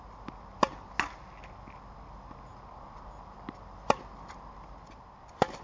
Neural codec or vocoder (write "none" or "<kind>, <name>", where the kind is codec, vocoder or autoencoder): none